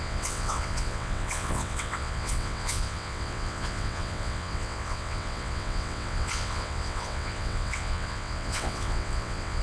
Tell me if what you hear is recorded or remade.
remade